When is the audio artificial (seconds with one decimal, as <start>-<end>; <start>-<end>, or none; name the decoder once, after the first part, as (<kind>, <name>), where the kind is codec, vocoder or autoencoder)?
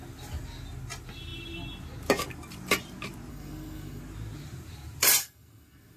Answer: 3.3-4.0 (codec, SNAC); 5.2-6.0